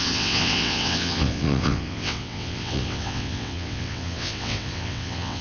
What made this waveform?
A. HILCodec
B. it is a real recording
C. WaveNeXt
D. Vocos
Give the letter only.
C